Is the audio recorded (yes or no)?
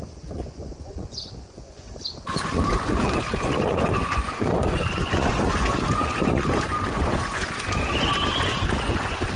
no